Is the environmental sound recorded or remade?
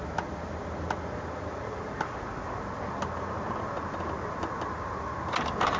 recorded